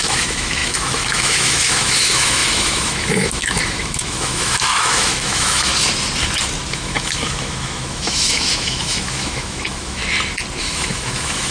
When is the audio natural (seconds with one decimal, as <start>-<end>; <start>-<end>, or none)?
5.7-6.7; 10.0-10.6